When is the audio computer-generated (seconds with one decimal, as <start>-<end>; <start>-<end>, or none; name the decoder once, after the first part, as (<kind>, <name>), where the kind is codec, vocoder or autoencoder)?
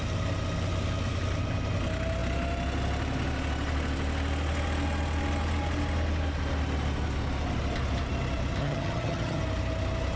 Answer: 8.6-9.4 (vocoder, HiFi-GAN)